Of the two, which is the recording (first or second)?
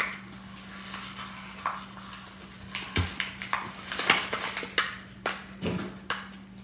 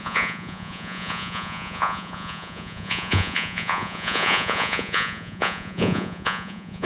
first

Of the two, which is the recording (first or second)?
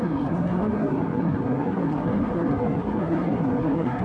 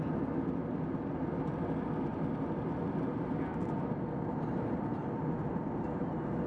second